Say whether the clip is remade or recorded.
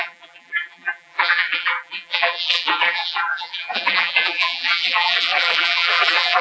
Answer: remade